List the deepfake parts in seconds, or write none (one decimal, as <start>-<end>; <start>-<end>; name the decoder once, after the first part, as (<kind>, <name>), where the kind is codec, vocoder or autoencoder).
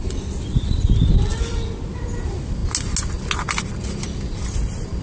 none